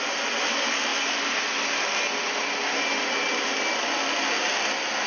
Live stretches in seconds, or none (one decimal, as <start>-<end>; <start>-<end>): 0.0-5.1